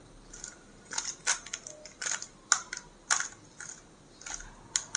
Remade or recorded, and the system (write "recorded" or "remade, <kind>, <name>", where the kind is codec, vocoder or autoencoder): recorded